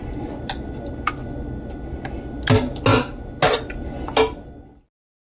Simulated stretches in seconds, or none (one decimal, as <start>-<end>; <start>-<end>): none